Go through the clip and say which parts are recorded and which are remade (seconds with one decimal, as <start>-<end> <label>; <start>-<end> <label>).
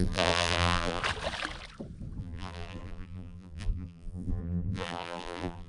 0.0-1.0 remade; 1.0-2.2 recorded; 2.2-5.7 remade